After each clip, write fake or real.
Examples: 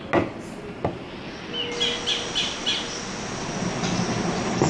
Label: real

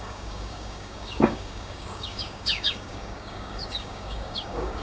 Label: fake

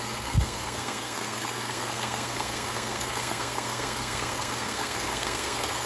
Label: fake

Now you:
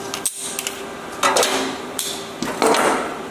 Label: real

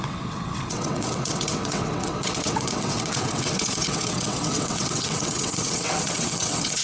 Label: fake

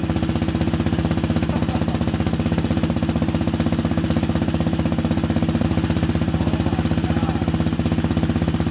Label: real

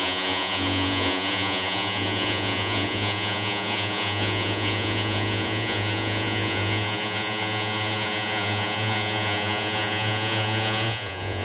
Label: fake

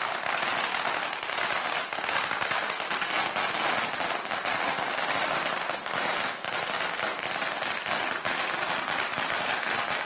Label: real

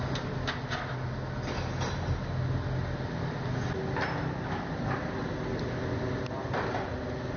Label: real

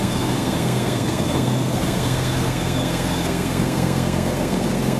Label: fake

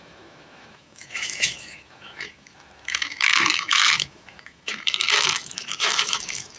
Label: fake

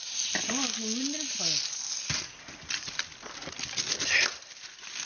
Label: real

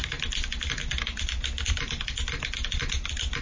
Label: fake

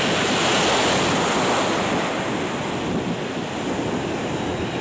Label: real